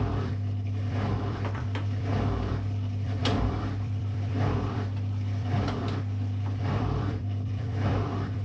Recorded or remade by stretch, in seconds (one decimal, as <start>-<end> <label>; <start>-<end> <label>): 0.0-8.4 remade